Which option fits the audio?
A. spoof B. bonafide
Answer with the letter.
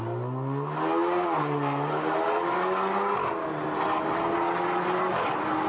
B